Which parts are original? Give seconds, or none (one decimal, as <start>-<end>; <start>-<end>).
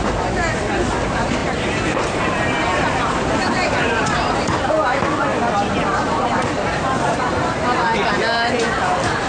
0.0-1.4; 4.7-5.9